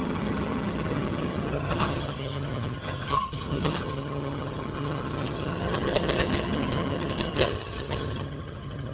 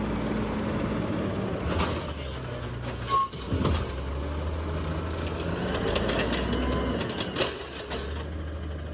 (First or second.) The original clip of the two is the second